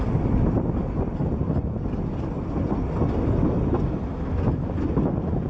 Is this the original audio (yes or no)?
yes